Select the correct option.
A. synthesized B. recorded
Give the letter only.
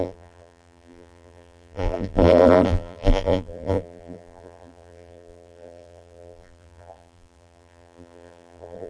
A